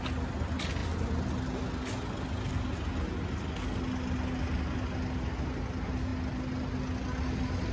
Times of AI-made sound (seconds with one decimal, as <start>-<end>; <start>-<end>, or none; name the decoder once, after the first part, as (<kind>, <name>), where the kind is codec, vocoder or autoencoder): none